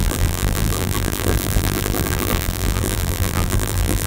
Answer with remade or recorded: remade